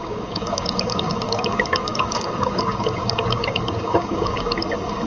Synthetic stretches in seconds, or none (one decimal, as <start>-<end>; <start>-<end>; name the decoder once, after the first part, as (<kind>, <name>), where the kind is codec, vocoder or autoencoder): 0.0-5.1 (codec, DAC)